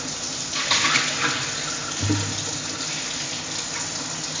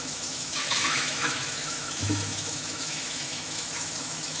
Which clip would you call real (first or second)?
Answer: first